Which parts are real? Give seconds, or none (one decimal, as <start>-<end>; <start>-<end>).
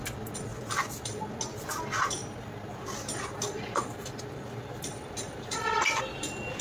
0.0-0.5; 1.2-2.2; 2.7-4.9; 6.0-6.6